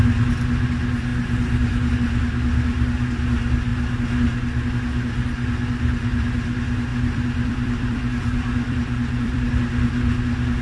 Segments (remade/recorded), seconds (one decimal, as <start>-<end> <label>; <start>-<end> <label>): 0.0-6.9 recorded; 6.9-9.5 remade; 9.5-10.6 recorded